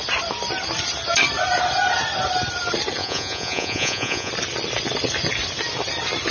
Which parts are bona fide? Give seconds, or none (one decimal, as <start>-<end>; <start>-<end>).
0.0-3.0; 4.3-6.3